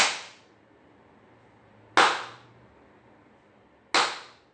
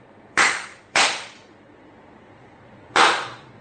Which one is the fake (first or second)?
second